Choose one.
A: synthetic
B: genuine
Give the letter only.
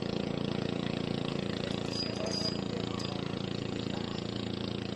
A